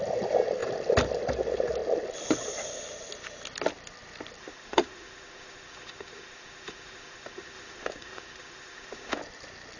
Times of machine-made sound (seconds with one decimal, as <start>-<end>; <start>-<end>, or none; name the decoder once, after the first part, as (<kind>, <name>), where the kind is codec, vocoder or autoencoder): 4.4-9.2 (autoencoder, DAC-VAE)